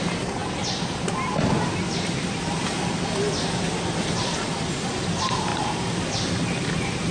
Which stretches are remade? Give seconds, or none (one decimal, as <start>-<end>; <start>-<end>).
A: none